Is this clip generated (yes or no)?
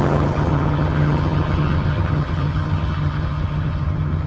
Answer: yes